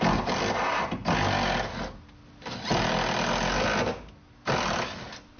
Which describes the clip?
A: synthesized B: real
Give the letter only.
B